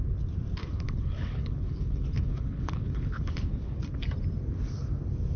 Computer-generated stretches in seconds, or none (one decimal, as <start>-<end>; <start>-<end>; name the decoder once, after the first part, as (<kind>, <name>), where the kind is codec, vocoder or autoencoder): 0.6-3.8 (codec, HILCodec)